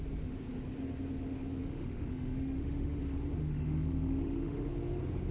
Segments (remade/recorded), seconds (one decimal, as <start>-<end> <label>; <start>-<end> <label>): 0.0-1.6 recorded; 1.6-3.0 remade; 3.0-3.4 recorded; 3.4-4.7 remade; 4.7-5.3 recorded